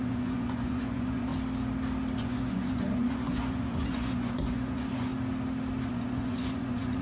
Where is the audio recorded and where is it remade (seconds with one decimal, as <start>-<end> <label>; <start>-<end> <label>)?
0.0-1.3 remade; 1.3-2.2 recorded; 2.2-5.1 remade; 5.1-5.9 recorded; 5.9-7.0 remade